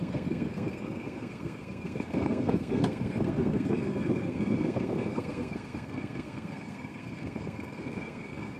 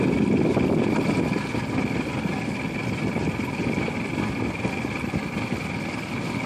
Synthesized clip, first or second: first